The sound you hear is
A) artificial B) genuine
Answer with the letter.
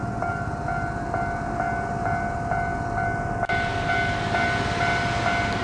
B